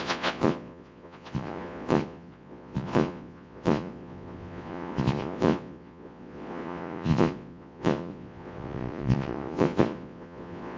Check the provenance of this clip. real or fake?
fake